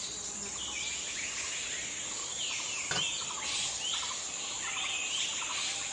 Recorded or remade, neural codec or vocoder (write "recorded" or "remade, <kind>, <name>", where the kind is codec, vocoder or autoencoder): recorded